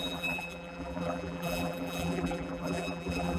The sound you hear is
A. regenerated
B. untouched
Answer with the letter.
A